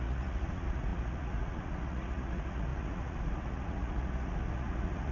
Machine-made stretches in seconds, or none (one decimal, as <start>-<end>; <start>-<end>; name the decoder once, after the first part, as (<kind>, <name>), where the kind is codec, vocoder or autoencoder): 0.0-5.1 (vocoder, Vocos)